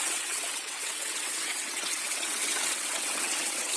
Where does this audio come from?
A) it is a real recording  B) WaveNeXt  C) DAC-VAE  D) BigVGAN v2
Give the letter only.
B